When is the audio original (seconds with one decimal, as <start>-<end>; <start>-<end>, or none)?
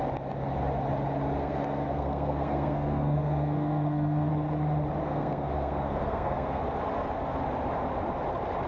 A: 0.0-1.4; 4.3-5.0; 6.6-8.7